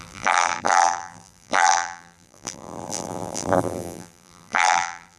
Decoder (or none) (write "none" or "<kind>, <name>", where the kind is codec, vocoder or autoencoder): vocoder, BigVGAN v2